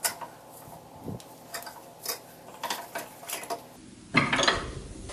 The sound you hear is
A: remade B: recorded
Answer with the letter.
B